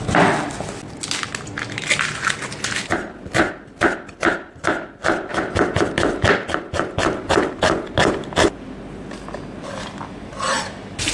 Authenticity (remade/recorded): recorded